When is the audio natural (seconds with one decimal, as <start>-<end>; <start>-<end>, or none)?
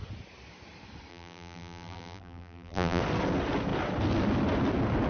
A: 0.0-1.1; 3.0-5.1